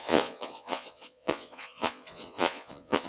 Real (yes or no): no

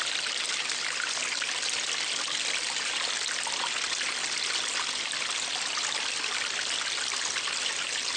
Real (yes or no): yes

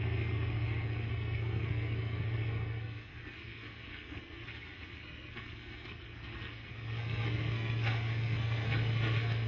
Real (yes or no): no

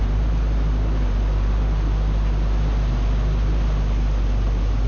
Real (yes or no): yes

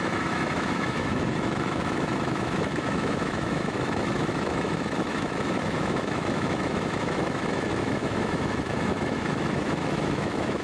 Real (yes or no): no